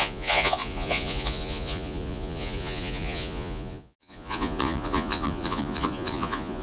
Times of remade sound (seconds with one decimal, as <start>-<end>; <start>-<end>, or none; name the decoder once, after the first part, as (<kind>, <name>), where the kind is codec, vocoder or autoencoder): 0.0-6.6 (vocoder, Vocos)